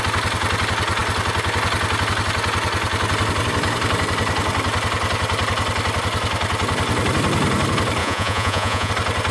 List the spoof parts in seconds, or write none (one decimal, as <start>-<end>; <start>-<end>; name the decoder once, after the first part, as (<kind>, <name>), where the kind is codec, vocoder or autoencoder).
8.0-8.9 (vocoder, Vocos)